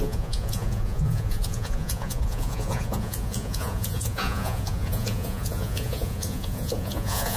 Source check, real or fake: fake